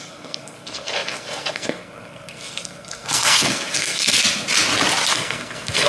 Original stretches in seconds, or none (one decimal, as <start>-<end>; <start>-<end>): 4.2-5.1